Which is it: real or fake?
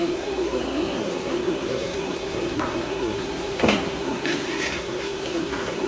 fake